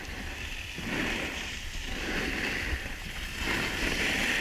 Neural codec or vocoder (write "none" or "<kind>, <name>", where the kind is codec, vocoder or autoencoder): none